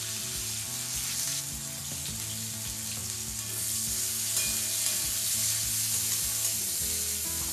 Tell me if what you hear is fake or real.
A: real